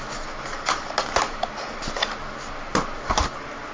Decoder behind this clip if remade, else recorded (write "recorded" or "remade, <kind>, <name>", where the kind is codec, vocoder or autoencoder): recorded